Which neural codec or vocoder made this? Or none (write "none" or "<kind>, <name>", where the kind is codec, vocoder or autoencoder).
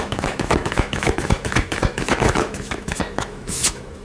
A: autoencoder, DAC-VAE